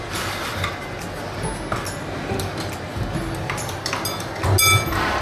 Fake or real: real